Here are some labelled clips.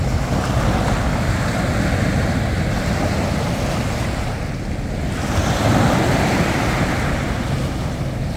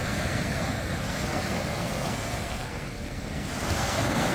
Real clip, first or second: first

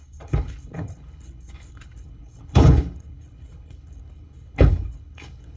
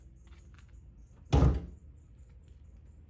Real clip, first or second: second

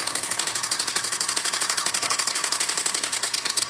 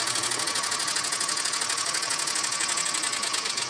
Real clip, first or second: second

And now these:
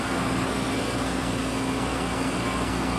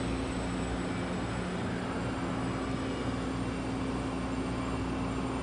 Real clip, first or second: second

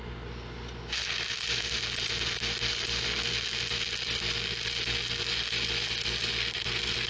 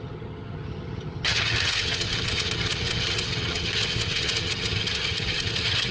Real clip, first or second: first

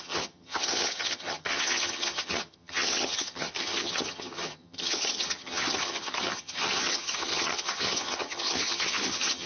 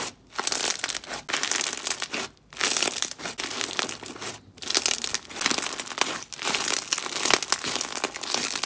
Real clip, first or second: second